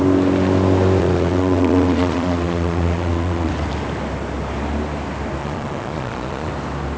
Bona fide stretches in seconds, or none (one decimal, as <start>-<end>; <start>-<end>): 0.0-1.0; 3.5-5.4; 6.5-7.0